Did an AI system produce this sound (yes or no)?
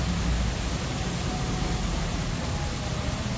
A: no